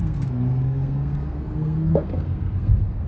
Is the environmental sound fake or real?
fake